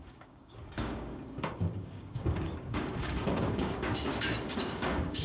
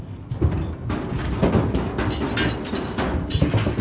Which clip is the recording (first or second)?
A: second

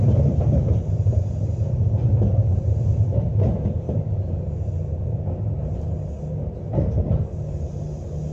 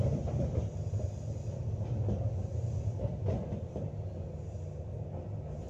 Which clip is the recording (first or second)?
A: second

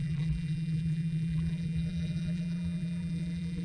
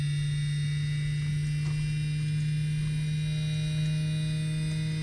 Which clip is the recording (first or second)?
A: second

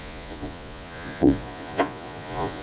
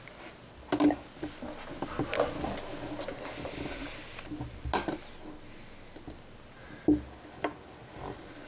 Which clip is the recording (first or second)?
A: second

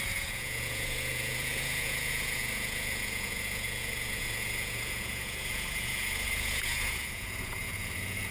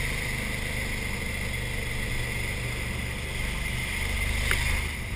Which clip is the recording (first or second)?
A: second